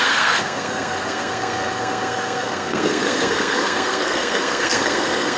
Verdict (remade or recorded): remade